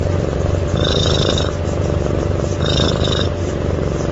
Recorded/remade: remade